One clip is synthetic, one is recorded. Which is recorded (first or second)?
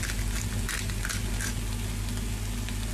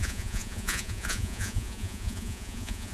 first